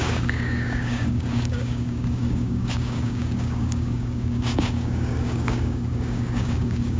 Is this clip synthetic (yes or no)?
yes